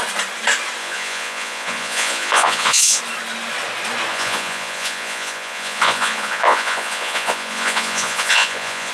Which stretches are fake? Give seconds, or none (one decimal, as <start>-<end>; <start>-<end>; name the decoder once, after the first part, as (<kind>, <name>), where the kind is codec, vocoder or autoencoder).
0.8-3.0 (vocoder, Vocos); 4.1-8.9